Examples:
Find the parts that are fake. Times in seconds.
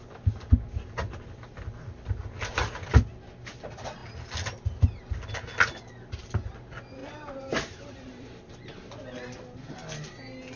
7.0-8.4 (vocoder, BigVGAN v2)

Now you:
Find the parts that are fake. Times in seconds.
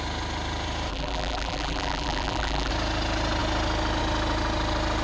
0.9-2.7 (vocoder, BigVGAN v2)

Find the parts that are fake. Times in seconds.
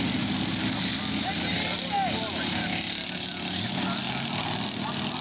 none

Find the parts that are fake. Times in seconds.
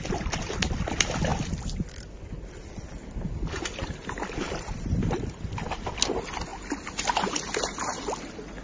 1.3-1.9 (vocoder, BigVGAN v2); 3.0-5.1; 6.5-7.3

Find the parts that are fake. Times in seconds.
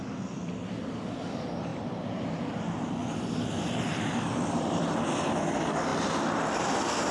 1.7-2.4 (vocoder, BigVGAN v2); 3.0-4.8; 5.9-7.1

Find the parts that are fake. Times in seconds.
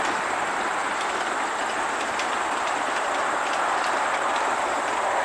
none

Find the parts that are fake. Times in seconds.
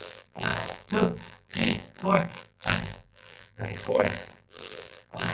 0.0-5.3 (vocoder, BigVGAN v2)